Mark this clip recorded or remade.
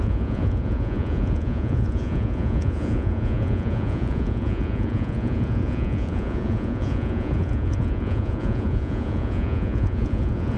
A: remade